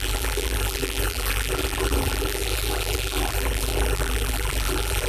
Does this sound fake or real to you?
fake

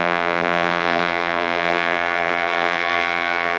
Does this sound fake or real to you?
fake